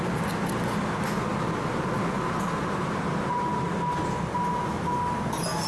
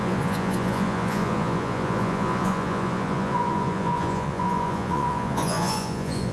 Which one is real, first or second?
first